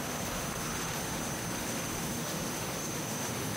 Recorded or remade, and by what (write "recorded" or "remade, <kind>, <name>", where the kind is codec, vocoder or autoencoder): remade, autoencoder, DAC-VAE